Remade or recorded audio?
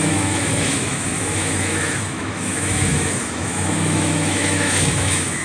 remade